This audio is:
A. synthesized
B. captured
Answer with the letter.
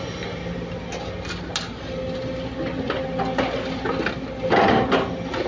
B